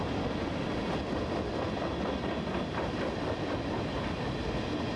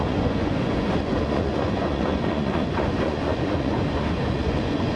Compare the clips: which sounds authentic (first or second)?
first